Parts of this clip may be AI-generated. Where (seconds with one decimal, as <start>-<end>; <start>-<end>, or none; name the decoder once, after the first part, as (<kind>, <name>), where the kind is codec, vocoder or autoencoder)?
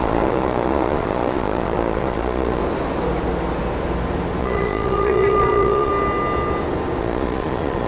0.0-2.6 (vocoder, Vocos); 4.4-5.9; 7.0-7.9